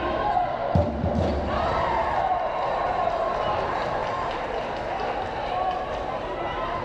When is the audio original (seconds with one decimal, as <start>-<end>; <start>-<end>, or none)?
0.6-1.4; 4.0-5.2

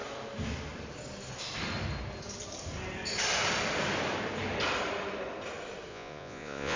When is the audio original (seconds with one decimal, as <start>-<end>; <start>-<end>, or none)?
0.0-5.9